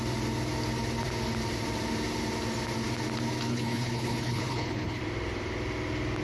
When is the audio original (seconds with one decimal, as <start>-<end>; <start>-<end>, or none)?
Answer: 0.0-3.5; 5.0-6.2